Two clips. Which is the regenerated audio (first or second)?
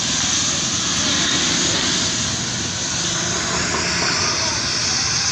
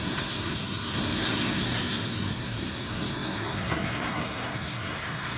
second